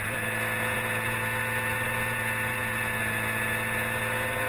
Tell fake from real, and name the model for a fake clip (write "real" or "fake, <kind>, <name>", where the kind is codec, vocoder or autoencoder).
fake, vocoder, Vocos